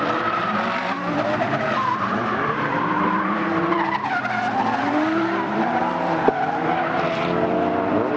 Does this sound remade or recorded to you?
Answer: remade